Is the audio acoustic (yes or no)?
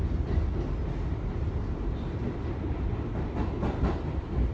yes